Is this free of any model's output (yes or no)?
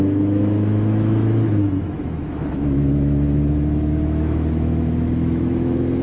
no